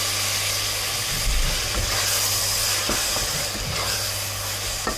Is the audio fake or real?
real